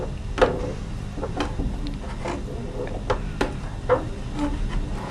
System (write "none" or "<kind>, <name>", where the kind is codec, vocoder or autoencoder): none